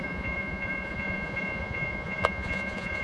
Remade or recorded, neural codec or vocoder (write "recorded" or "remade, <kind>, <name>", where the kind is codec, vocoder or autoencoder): remade, vocoder, Vocos